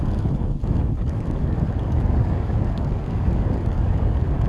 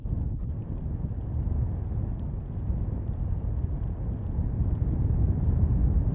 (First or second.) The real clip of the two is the second